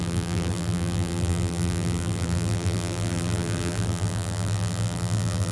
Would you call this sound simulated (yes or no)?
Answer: yes